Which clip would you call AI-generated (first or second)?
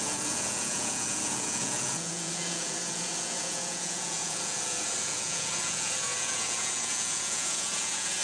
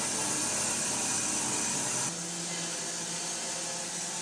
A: first